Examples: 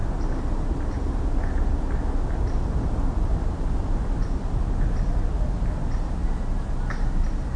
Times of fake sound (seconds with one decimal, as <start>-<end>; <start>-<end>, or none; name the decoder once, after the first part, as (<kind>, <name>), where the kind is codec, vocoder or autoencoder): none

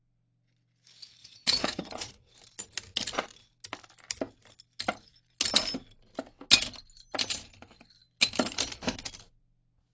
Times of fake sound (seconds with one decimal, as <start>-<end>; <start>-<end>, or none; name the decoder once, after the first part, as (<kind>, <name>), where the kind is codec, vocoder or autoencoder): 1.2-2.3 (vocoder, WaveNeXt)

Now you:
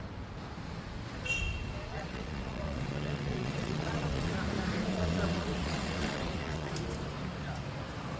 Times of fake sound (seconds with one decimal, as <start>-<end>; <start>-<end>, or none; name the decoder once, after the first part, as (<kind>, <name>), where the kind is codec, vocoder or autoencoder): 1.9-4.3 (vocoder, WaveNeXt); 4.9-6.7